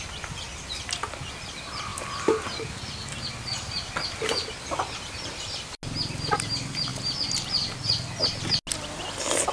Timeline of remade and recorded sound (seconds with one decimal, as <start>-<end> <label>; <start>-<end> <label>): 0.0-9.5 recorded